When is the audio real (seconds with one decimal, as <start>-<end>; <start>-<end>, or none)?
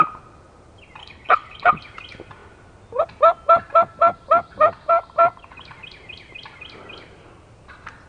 0.0-1.0; 1.8-8.1